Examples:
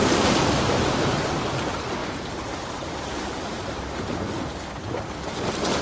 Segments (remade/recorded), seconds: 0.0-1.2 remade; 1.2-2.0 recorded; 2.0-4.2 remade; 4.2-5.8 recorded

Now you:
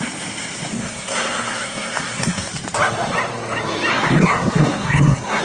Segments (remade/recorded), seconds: 0.0-0.7 recorded; 0.7-2.5 remade; 2.5-3.9 recorded; 3.9-5.4 remade

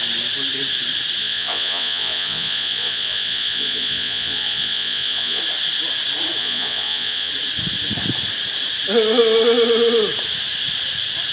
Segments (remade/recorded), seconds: 0.0-1.2 recorded; 1.2-5.4 remade; 5.4-6.4 recorded; 6.4-7.3 remade; 7.3-11.3 recorded